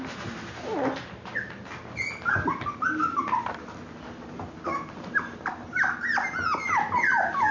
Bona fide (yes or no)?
yes